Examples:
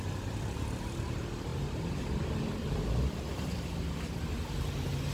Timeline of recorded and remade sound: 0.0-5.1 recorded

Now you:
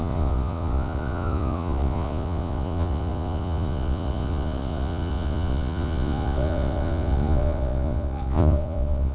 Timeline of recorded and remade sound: 0.0-9.1 remade

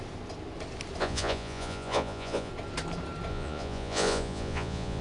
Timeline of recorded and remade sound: 0.0-1.0 recorded; 1.0-2.5 remade; 2.5-3.3 recorded; 3.3-5.0 remade

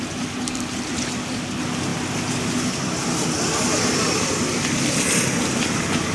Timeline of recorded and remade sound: 0.0-6.1 recorded

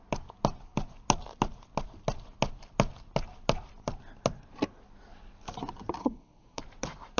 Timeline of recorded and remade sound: 0.0-6.0 recorded; 6.0-6.6 remade; 6.6-7.2 recorded